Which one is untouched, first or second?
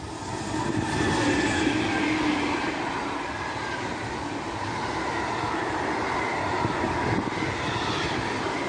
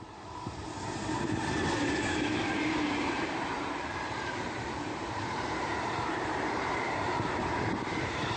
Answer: first